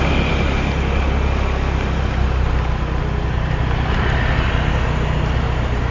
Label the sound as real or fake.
real